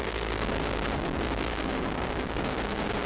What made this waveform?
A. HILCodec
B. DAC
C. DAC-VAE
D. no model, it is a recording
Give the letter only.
B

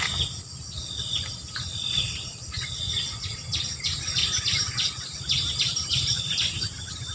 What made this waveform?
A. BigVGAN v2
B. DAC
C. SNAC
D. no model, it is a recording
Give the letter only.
D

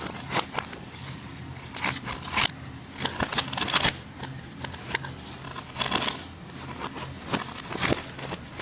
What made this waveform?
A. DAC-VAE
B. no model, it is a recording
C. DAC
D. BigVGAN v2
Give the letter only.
B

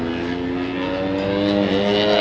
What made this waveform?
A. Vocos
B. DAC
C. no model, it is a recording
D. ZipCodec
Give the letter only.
C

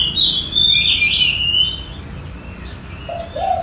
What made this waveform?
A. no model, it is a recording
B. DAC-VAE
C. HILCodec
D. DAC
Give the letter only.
A